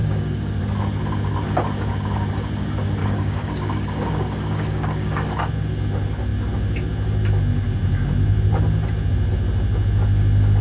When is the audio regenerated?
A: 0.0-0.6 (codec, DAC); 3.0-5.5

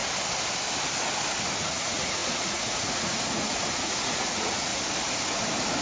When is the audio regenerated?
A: 1.6-4.7 (vocoder, Vocos)

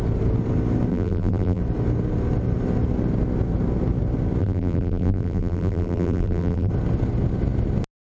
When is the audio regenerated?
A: 0.9-1.6 (vocoder, BigVGAN v2); 4.4-6.7

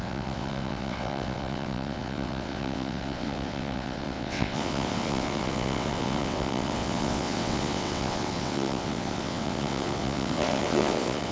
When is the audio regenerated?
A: 0.0-11.3 (vocoder, WaveNeXt)

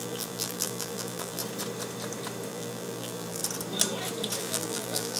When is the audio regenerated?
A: 0.0-1.4 (vocoder, BigVGAN v2); 2.5-3.4; 4.4-5.2